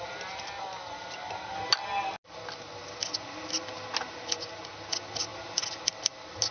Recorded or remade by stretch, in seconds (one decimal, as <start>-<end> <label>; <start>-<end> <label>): 0.0-6.5 recorded